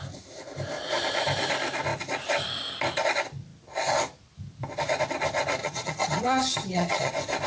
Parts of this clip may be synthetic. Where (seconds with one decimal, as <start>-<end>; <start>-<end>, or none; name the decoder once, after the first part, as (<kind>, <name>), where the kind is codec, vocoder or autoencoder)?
5.6-7.1 (vocoder, HiFi-GAN)